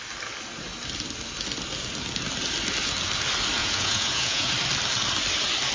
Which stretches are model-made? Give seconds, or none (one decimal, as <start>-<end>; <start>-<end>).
3.6-4.5